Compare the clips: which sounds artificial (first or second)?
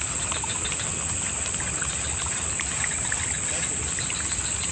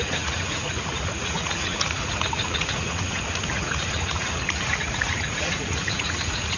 second